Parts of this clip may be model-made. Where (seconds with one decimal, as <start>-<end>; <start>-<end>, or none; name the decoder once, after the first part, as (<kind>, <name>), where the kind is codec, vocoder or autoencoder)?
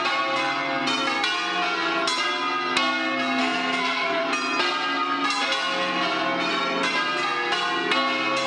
3.4-4.2 (codec, SNAC)